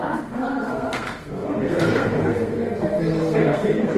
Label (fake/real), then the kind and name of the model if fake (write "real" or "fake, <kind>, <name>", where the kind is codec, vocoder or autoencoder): fake, codec, SNAC